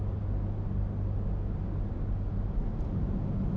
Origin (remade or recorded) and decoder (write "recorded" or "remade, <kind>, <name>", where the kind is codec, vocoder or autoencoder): recorded